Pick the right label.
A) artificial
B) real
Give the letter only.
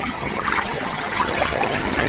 A